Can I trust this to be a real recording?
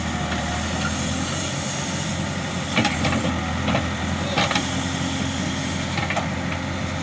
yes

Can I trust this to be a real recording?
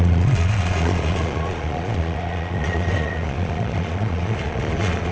no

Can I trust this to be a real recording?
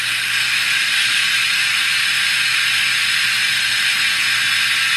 yes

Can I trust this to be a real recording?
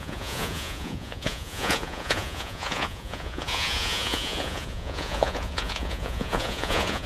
no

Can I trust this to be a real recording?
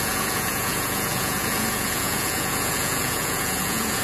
no